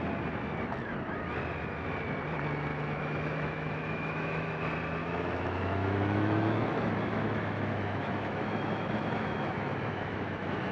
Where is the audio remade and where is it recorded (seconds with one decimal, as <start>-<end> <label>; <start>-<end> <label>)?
0.0-2.7 recorded; 2.7-4.5 remade; 4.5-5.0 recorded; 5.0-10.7 remade